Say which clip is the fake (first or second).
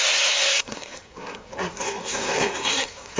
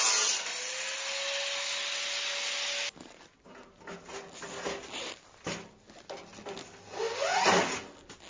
first